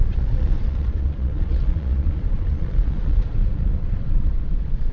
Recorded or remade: remade